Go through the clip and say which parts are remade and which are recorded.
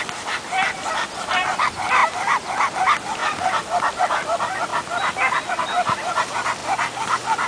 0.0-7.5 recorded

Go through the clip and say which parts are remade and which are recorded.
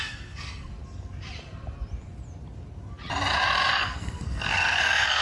0.0-0.7 remade; 0.7-3.7 recorded; 3.7-5.2 remade